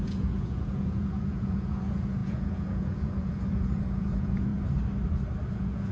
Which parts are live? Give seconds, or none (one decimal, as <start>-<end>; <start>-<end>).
4.5-5.5

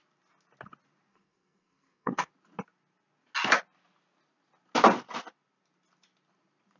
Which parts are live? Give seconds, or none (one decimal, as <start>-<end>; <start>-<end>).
0.0-1.1; 2.3-6.8

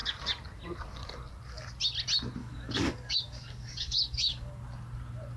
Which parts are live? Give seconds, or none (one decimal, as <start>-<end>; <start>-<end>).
0.0-2.4; 4.5-5.4

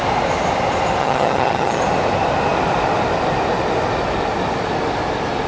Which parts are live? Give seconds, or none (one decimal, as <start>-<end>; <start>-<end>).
0.0-1.0; 1.8-5.5

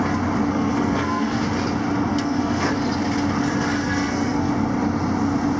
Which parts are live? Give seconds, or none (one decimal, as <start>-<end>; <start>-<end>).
0.0-0.5; 1.4-2.1; 2.7-3.8; 4.5-5.6

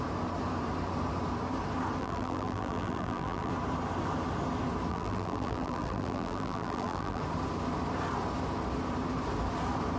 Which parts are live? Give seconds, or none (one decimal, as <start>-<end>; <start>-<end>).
0.0-2.0; 3.5-4.9; 7.2-10.0

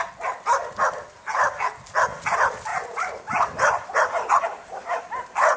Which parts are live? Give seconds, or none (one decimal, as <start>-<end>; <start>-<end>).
0.0-2.7; 5.0-5.6